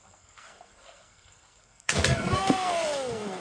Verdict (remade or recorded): remade